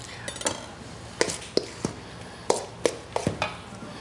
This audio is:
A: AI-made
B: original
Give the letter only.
B